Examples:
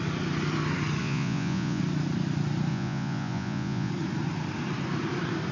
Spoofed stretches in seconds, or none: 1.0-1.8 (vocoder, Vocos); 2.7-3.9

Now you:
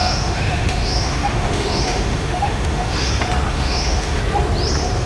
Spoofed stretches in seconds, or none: 0.0-3.1 (autoencoder, DAC-VAE); 3.5-4.2

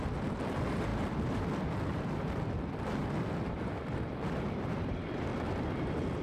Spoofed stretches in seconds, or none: 0.0-5.3 (vocoder, BigVGAN v2)

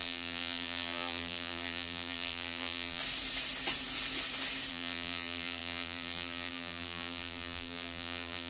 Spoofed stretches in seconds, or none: 0.0-3.0 (vocoder, BigVGAN v2); 4.7-8.5

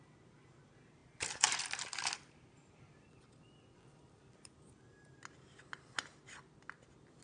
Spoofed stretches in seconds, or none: 1.0-4.5 (vocoder, BigVGAN v2)

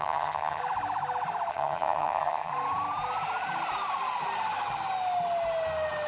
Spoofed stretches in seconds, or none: 0.0-0.6 (vocoder, HiFi-GAN); 1.5-2.5